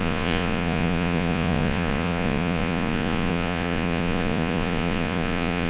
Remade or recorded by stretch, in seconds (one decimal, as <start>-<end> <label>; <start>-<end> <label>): 0.0-5.7 remade